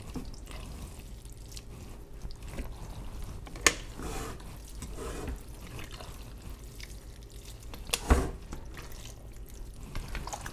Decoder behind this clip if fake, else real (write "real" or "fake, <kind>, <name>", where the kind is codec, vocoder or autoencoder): real